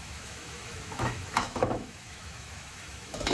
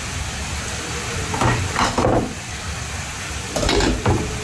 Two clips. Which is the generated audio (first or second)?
first